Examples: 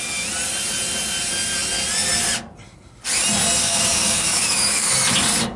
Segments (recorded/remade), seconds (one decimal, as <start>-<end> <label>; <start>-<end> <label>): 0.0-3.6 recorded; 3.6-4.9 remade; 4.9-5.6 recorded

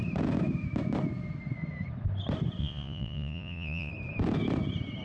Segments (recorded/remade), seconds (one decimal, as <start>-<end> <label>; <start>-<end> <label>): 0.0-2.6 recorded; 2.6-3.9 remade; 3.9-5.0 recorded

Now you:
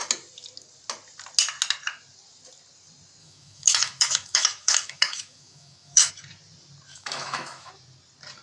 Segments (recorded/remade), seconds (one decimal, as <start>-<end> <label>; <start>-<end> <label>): 0.0-3.2 recorded; 3.2-6.1 remade; 6.1-6.9 recorded; 6.9-7.7 remade; 7.7-8.4 recorded